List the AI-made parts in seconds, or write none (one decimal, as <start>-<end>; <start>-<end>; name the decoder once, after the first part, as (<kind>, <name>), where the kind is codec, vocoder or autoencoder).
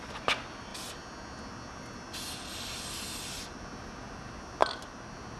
none